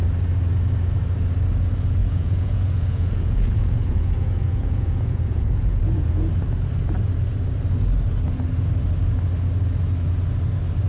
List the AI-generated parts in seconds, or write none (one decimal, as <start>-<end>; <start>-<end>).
2.0-6.1